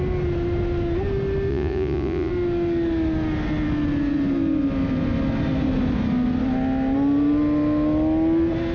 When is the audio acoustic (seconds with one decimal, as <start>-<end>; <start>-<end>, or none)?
0.0-1.5; 2.3-8.7